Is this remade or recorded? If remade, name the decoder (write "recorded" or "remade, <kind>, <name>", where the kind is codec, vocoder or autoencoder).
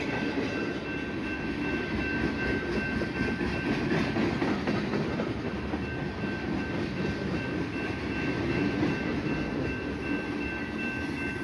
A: recorded